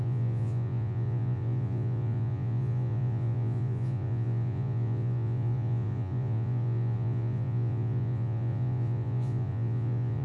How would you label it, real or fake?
fake